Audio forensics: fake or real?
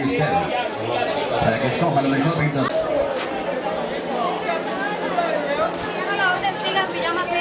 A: real